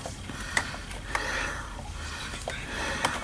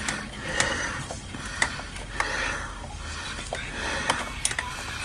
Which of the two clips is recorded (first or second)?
second